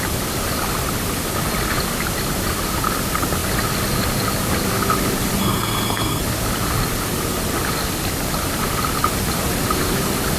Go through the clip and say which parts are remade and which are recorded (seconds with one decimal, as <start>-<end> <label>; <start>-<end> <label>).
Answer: 0.0-5.4 recorded; 5.4-6.2 remade; 6.2-10.4 recorded